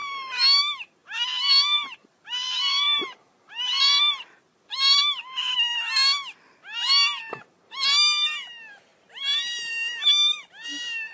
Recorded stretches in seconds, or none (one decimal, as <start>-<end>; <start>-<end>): 0.0-1.0; 5.2-11.1